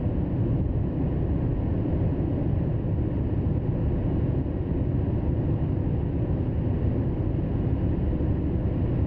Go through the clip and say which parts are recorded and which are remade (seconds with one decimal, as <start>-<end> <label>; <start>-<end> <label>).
0.0-9.1 recorded